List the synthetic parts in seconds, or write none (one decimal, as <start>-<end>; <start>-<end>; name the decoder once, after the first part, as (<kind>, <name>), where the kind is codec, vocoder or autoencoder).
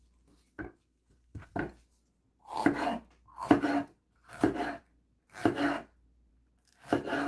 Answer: 0.6-1.5 (codec, SNAC)